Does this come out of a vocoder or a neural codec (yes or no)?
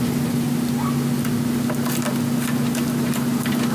no